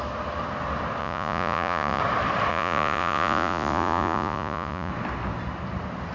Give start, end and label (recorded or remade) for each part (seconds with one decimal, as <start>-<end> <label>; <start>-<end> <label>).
0.0-1.0 recorded; 1.0-2.0 remade; 2.0-2.5 recorded; 2.5-4.9 remade; 4.9-6.1 recorded